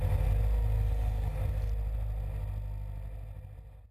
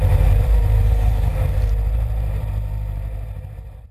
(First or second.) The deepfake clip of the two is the second